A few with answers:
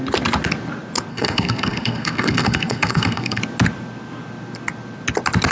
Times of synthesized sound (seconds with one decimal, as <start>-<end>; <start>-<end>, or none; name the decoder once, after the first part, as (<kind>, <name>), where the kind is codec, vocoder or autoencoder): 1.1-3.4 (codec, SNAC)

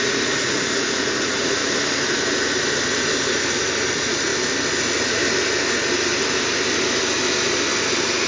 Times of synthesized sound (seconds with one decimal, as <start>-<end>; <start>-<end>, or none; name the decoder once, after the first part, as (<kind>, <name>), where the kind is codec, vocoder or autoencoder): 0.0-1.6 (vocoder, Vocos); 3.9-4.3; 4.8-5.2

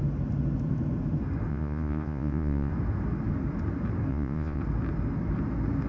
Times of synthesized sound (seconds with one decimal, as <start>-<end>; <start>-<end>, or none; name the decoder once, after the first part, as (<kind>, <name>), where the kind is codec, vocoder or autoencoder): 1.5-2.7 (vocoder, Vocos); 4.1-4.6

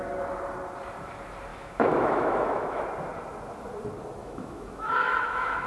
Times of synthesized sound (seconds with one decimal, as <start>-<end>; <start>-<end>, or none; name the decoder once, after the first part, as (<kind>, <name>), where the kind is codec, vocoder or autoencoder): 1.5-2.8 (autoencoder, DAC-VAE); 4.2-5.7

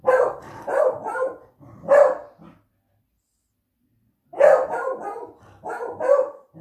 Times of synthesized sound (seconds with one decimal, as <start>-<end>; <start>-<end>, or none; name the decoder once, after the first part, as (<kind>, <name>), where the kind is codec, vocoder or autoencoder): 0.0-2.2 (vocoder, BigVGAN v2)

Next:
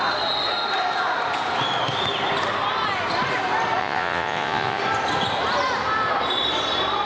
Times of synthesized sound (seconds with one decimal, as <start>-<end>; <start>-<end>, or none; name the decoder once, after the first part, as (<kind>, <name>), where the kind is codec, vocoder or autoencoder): 3.8-4.8 (vocoder, Vocos)

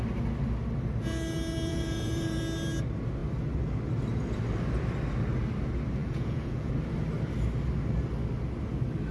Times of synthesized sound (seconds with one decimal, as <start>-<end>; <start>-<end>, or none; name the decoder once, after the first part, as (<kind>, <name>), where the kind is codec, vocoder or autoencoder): 1.7-2.4 (vocoder, Vocos); 6.0-6.7

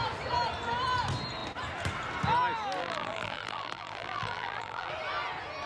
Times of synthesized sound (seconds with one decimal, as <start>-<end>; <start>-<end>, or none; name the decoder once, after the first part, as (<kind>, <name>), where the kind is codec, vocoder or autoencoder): 2.8-4.9 (vocoder, BigVGAN v2)